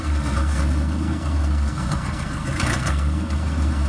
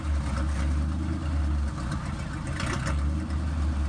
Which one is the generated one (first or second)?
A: first